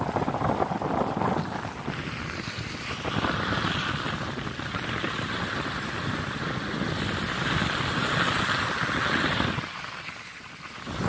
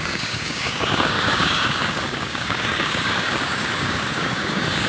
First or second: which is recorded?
first